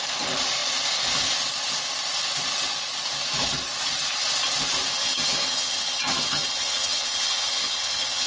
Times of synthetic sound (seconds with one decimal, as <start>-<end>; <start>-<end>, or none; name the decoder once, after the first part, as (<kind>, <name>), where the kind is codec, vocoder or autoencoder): 4.9-8.3 (vocoder, HiFi-GAN)